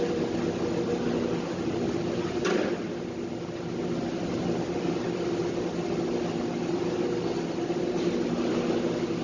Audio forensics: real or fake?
real